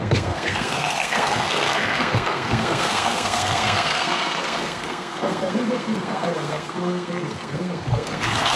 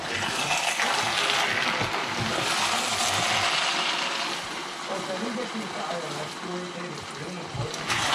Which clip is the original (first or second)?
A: second